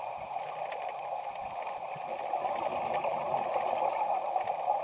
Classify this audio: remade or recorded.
recorded